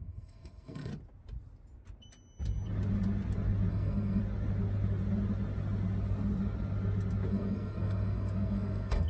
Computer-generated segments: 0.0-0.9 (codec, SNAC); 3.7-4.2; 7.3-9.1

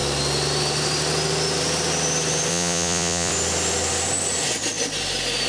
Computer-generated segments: 2.5-3.3 (vocoder, Vocos)

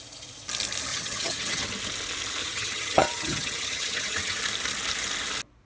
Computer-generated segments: 0.9-1.6 (vocoder, HiFi-GAN); 2.4-4.4

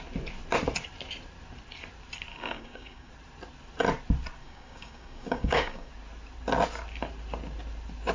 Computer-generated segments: 2.3-3.1 (codec, DAC); 4.4-5.9

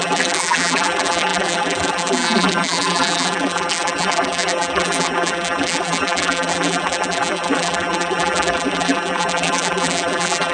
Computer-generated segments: 0.0-10.5 (vocoder, BigVGAN v2)